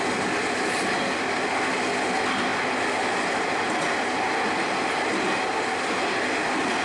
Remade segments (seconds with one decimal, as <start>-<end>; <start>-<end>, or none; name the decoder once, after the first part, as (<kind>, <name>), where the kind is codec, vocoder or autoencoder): none